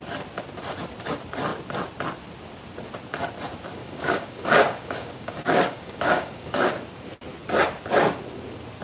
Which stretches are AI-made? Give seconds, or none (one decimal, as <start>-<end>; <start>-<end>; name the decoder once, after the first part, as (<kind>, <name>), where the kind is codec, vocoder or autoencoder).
3.8-6.7 (codec, DAC)